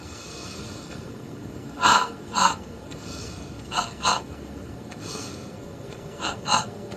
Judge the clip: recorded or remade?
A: remade